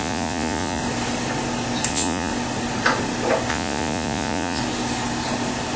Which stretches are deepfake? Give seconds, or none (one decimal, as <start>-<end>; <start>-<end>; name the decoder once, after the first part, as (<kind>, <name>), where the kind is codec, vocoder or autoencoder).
0.0-0.8 (vocoder, Vocos); 1.9-2.3; 3.5-4.6